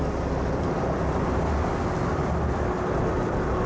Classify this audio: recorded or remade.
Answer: recorded